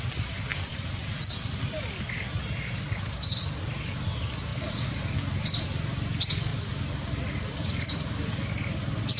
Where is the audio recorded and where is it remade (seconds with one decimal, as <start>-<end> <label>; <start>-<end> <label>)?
0.0-0.5 recorded; 0.5-1.0 remade; 1.0-4.5 recorded; 4.5-5.1 remade; 5.1-9.2 recorded